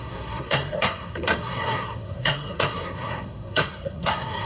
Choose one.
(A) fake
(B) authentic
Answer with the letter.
A